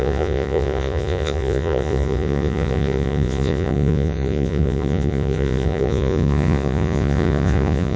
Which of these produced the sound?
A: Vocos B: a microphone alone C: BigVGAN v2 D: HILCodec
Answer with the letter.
A